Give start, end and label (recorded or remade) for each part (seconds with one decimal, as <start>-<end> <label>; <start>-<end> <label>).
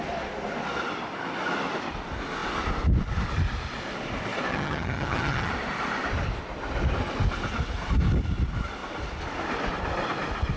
0.0-4.5 recorded; 4.5-5.5 remade; 5.5-10.6 recorded